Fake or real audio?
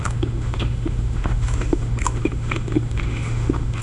fake